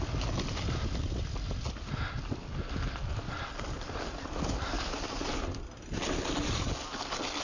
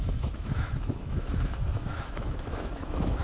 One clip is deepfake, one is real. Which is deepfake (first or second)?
second